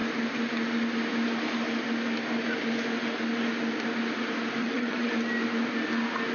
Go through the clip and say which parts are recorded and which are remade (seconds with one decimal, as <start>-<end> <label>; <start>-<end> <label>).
0.0-4.6 recorded; 4.6-5.1 remade; 5.1-6.3 recorded